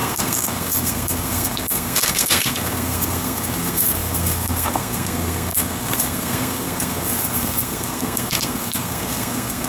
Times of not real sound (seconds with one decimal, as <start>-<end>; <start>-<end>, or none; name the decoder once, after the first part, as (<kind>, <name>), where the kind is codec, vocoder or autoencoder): 0.0-9.7 (codec, SNAC)